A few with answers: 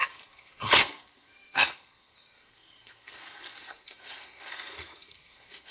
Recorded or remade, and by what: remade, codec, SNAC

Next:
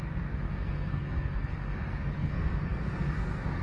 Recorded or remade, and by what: remade, codec, SNAC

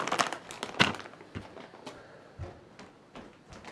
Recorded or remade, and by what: recorded